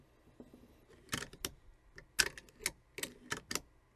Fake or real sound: real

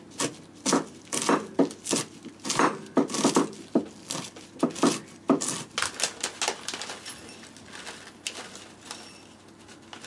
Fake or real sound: real